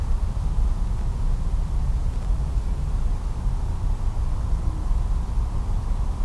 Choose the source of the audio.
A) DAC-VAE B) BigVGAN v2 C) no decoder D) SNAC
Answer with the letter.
C